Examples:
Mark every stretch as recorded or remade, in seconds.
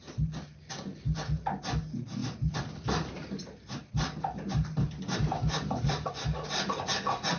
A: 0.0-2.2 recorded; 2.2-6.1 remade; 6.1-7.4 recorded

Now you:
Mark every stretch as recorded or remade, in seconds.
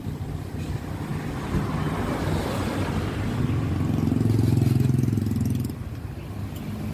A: 0.0-6.9 recorded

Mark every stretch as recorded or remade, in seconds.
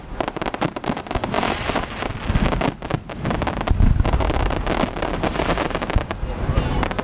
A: 0.0-1.2 remade; 1.2-5.0 recorded; 5.0-7.0 remade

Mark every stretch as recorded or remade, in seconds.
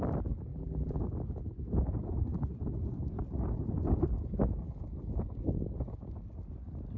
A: 0.0-0.5 recorded; 0.5-1.0 remade; 1.0-7.0 recorded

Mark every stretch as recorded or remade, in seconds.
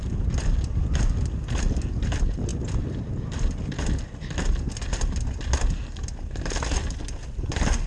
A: 0.0-7.9 recorded